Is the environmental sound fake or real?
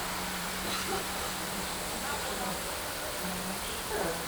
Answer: fake